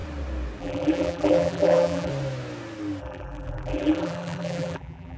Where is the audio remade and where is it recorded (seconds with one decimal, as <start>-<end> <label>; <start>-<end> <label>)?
0.0-0.6 recorded; 0.6-2.1 remade; 2.1-3.0 recorded; 3.0-5.2 remade